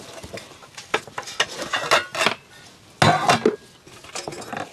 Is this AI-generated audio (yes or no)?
no